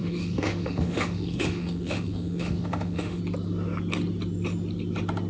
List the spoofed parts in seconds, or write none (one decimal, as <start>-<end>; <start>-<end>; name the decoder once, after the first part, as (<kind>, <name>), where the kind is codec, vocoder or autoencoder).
0.0-3.2 (autoencoder, DAC-VAE)